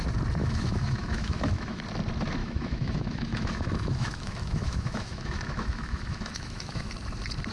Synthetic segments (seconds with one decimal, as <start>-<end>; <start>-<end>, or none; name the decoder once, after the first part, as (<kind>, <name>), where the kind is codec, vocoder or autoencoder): 0.4-1.8 (autoencoder, DAC-VAE); 2.4-6.9